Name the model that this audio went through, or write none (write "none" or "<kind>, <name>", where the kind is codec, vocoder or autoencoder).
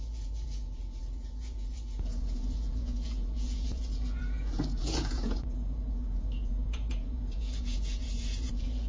vocoder, Vocos